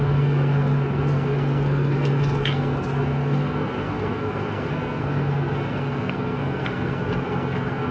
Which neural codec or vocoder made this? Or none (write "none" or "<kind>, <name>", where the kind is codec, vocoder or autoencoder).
codec, SNAC